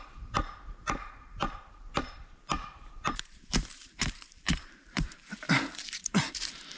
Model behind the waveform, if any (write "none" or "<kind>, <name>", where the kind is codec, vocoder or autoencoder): vocoder, BigVGAN v2